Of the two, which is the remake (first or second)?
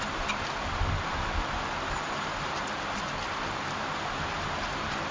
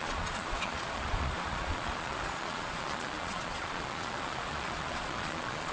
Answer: second